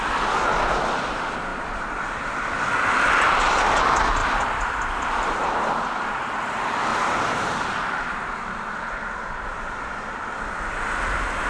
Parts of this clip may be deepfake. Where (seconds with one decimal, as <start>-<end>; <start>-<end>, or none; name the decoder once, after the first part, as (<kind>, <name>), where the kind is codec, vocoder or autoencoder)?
4.2-5.9 (vocoder, BigVGAN v2); 6.9-8.3